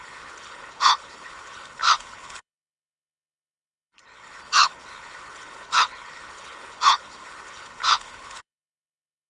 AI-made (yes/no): yes